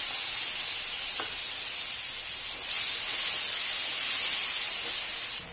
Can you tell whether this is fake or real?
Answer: real